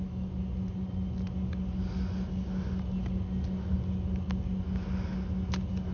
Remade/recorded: recorded